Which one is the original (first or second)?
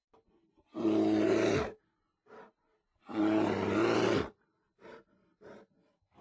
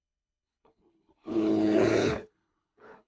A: first